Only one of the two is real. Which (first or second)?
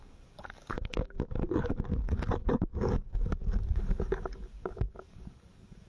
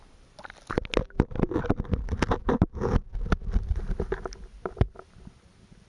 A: second